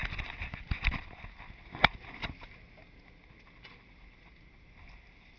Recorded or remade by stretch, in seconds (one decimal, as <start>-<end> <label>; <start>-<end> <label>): 0.0-5.4 recorded